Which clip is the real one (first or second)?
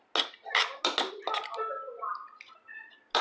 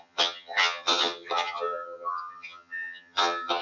first